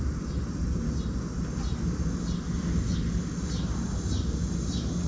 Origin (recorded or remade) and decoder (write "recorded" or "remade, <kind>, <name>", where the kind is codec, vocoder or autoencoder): recorded